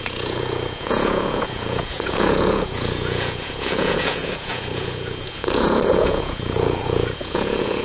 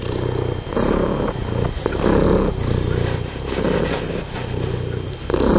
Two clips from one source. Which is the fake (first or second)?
first